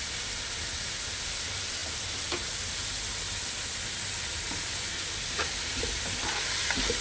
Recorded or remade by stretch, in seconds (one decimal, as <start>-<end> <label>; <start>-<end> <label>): 0.0-7.0 recorded